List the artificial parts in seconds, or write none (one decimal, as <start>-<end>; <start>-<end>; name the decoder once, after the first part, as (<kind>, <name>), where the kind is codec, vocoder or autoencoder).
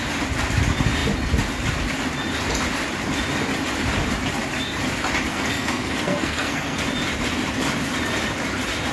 5.3-6.8 (codec, SNAC)